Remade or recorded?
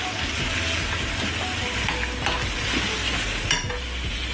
recorded